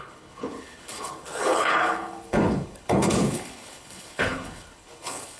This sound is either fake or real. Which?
fake